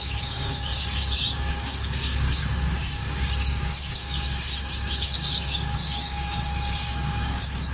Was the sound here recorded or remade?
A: remade